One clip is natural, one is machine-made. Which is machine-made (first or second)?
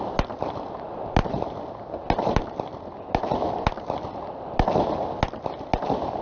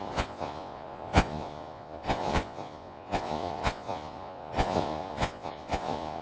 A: second